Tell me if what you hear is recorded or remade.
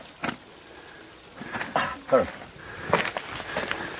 recorded